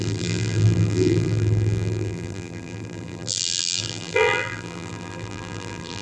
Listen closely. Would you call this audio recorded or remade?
remade